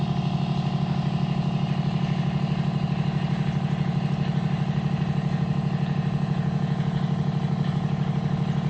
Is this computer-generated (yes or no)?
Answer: no